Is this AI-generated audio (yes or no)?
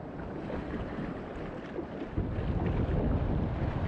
no